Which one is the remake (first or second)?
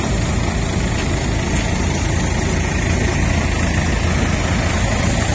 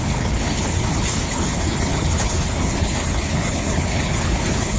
second